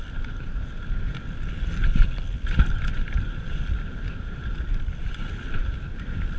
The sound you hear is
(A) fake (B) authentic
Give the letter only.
B